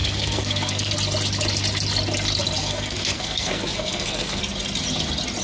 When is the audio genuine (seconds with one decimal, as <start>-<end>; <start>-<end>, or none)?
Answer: 0.9-2.6; 4.4-5.4